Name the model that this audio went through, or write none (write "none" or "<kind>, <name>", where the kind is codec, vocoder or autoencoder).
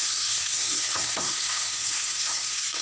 codec, SNAC